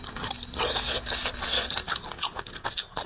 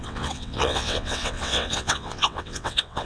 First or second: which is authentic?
first